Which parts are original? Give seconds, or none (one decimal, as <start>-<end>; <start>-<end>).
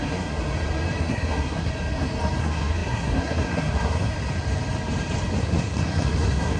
0.4-1.0; 1.7-2.4; 4.1-5.4